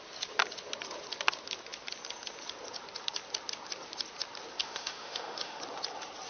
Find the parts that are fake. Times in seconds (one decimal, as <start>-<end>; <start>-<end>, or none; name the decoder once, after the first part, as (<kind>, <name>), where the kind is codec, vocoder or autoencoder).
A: 4.6-5.6 (autoencoder, DAC-VAE)

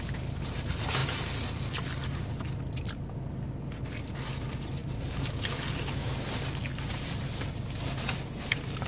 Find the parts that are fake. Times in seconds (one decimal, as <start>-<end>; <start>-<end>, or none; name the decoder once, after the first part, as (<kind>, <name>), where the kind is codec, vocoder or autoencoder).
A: none

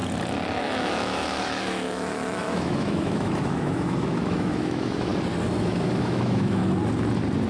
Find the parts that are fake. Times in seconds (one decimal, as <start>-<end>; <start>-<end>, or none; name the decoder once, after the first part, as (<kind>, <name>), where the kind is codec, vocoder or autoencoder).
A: 0.6-5.1 (autoencoder, DAC-VAE); 5.6-6.6